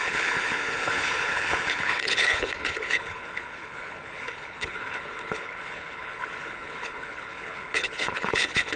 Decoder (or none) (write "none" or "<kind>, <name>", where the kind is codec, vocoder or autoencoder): codec, HILCodec